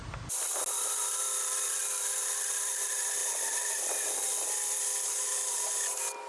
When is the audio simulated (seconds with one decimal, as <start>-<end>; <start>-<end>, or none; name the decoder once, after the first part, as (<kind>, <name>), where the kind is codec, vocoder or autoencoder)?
none